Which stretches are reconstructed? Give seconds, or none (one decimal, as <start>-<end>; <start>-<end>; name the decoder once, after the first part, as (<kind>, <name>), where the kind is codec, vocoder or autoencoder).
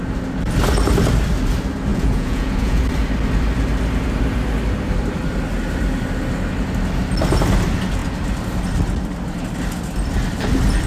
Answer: 1.9-2.8 (vocoder, Vocos)